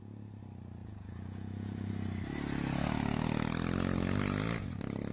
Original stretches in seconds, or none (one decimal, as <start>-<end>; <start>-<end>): 0.0-0.8; 1.9-5.1